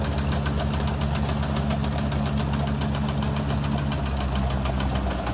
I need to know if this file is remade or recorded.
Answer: recorded